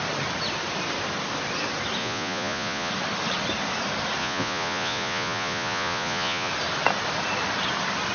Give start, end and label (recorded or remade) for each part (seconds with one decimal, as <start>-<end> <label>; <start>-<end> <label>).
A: 0.0-2.0 recorded; 2.0-2.9 remade; 2.9-4.2 recorded; 4.2-6.5 remade; 6.5-8.1 recorded